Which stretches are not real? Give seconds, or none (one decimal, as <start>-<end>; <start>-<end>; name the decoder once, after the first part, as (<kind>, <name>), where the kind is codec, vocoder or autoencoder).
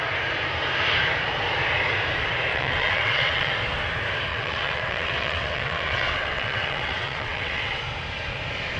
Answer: 2.5-3.5 (vocoder, WaveNeXt); 4.3-7.8